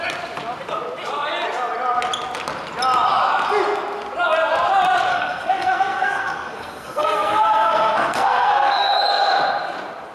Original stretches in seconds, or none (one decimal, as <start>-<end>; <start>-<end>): 0.0-5.1; 9.0-10.1